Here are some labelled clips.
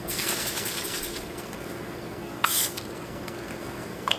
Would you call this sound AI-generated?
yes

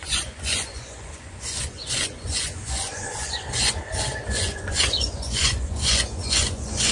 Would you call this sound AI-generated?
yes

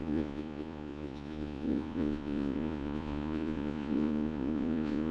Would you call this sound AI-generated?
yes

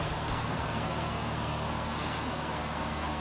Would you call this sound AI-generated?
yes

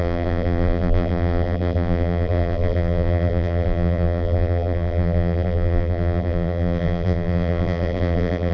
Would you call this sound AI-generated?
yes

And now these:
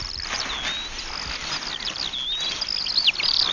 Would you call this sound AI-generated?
no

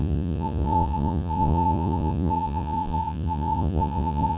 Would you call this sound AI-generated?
yes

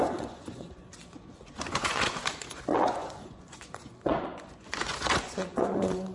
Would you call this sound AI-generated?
yes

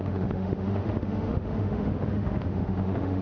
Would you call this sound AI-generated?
yes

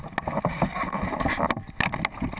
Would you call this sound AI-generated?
no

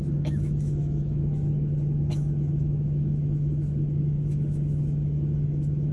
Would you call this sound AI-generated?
yes